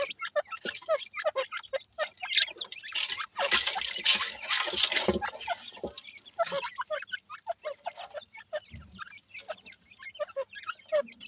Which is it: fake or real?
real